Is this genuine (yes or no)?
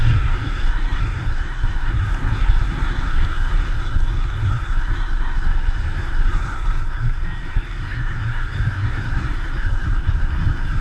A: no